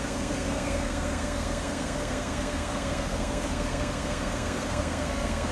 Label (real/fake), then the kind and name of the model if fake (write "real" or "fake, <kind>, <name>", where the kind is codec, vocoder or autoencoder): fake, codec, SNAC